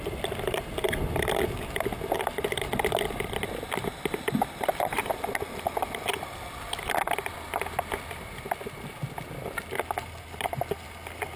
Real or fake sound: real